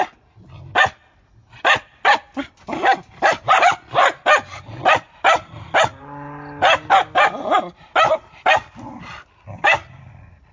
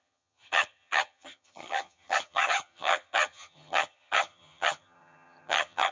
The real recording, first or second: first